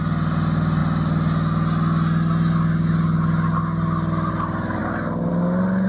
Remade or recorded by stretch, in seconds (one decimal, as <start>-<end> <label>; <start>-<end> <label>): 0.0-5.9 recorded